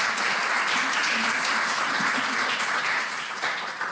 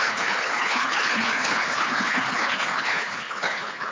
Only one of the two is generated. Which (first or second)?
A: second